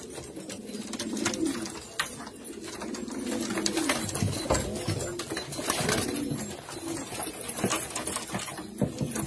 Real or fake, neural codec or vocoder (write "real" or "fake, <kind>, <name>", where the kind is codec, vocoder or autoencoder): real